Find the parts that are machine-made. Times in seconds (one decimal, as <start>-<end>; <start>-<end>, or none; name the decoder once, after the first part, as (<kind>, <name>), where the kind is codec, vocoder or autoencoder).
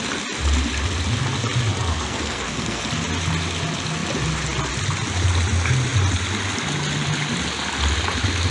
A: 1.7-2.8 (codec, SNAC)